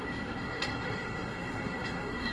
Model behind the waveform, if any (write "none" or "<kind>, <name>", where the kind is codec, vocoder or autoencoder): codec, SNAC